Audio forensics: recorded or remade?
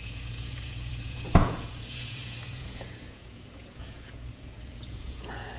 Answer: remade